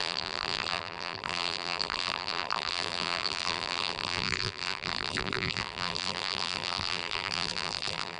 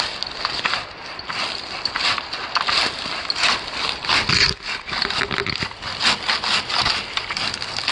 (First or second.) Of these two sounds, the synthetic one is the first